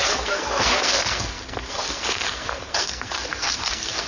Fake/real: fake